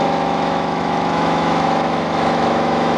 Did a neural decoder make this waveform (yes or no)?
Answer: yes